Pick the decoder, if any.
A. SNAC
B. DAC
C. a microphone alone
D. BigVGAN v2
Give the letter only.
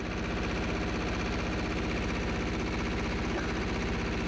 C